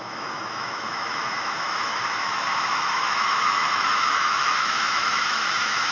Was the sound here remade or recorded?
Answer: remade